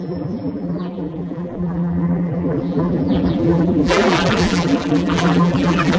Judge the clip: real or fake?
fake